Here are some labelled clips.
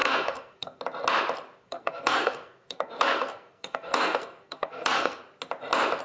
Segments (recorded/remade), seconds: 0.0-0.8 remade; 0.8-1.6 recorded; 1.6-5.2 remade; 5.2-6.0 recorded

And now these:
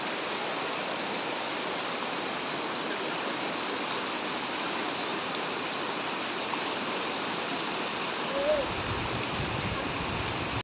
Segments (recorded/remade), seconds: 0.0-10.6 recorded

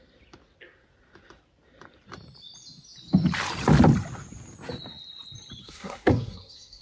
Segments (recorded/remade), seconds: 0.0-5.6 recorded; 5.6-6.8 remade

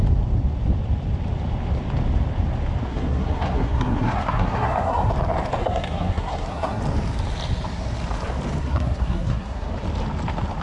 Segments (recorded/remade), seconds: 0.0-2.9 recorded; 2.9-5.1 remade; 5.1-5.6 recorded; 5.6-6.8 remade; 6.8-8.6 recorded; 8.6-9.7 remade; 9.7-10.6 recorded